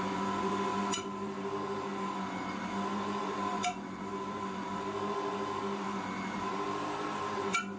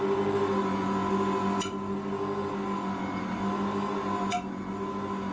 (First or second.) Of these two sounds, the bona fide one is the second